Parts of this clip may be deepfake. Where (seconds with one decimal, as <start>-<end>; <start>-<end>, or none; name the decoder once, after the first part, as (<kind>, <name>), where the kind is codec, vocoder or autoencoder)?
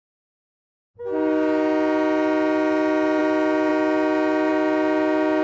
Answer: none